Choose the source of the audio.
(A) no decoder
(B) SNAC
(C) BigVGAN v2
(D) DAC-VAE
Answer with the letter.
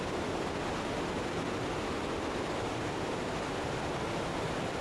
A